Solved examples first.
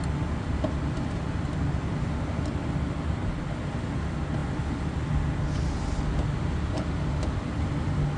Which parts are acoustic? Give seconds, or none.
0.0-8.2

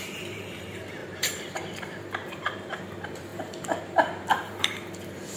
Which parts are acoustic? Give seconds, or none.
none

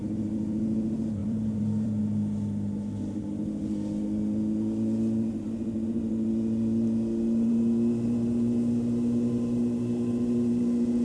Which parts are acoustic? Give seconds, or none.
0.0-1.2; 2.0-11.0

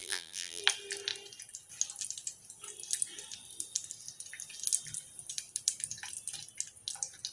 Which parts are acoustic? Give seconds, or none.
0.6-7.3

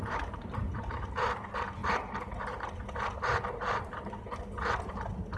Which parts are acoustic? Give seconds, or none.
none

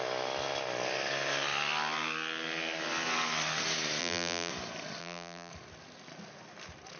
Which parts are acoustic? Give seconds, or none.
0.0-4.0; 4.5-5.0; 5.5-7.0